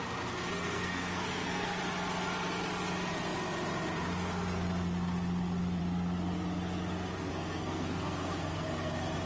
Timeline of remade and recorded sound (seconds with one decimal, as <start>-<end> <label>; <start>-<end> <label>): 0.0-0.6 recorded; 0.6-1.8 remade; 1.8-7.3 recorded; 7.3-8.9 remade; 8.9-9.3 recorded